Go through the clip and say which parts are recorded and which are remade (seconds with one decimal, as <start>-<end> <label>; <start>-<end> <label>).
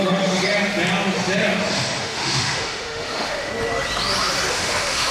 0.0-0.4 remade; 0.4-2.0 recorded; 2.0-3.5 remade; 3.5-4.5 recorded; 4.5-5.1 remade